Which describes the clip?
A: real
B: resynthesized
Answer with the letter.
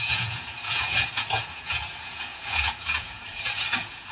B